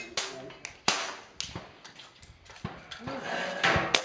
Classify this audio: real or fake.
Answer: real